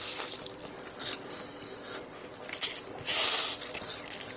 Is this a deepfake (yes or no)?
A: no